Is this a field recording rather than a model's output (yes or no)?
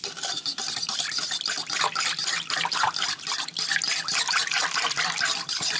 yes